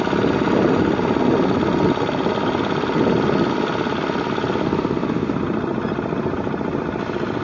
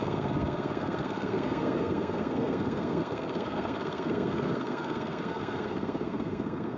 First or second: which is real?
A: first